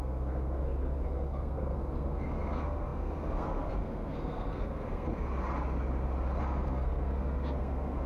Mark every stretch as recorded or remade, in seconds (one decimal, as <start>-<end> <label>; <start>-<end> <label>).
0.0-5.1 remade; 5.1-6.4 recorded; 6.4-8.1 remade